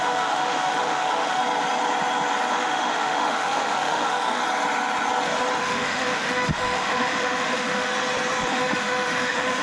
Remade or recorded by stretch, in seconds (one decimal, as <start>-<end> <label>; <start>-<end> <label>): 0.0-1.4 remade; 1.4-2.5 recorded; 2.5-4.4 remade; 4.4-5.6 recorded; 5.6-7.9 remade; 7.9-8.5 recorded; 8.5-9.6 remade